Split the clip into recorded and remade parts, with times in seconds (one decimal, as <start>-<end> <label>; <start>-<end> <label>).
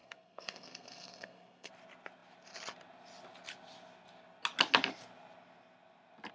0.0-1.7 remade; 1.7-6.3 recorded